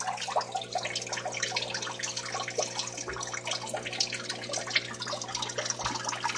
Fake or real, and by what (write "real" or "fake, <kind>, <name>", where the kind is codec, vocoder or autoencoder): real